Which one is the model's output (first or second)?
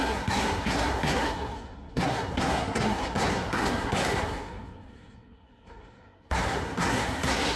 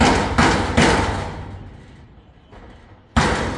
first